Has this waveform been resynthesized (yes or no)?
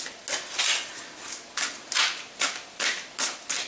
no